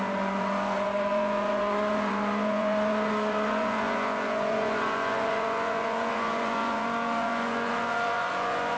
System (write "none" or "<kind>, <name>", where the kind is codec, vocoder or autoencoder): vocoder, Vocos